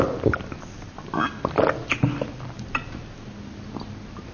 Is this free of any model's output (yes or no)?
yes